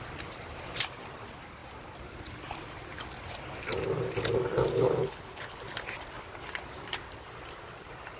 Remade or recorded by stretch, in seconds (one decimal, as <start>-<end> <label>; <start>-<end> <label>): 0.0-4.7 recorded; 4.7-5.6 remade; 5.6-8.2 recorded